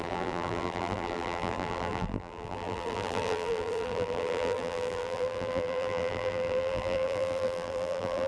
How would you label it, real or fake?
fake